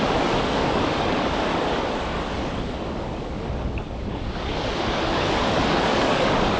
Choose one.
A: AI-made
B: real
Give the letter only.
A